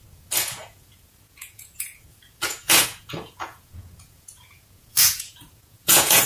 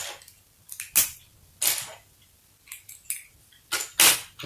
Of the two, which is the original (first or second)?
second